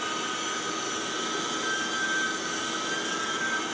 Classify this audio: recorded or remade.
recorded